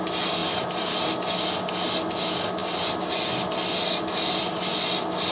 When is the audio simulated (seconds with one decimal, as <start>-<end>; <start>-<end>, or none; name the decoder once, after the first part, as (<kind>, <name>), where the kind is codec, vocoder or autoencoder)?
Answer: none